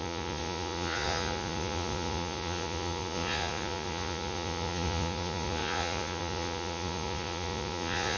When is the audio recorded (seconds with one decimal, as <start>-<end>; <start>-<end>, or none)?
none